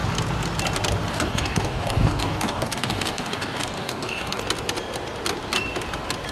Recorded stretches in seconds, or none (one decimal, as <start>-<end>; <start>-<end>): 0.0-1.1; 4.4-6.3